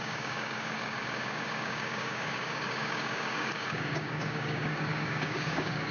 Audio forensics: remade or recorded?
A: remade